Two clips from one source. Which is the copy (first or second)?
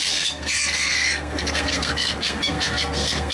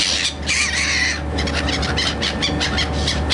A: first